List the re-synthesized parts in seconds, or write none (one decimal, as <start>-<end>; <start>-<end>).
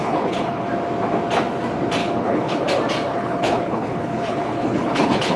0.0-0.7; 2.0-2.6; 3.1-5.4